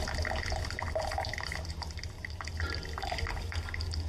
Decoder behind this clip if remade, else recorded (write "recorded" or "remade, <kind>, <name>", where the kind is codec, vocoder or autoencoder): recorded